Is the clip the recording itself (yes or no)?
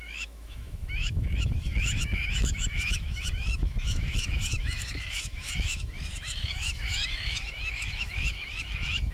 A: no